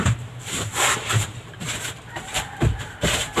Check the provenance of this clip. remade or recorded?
remade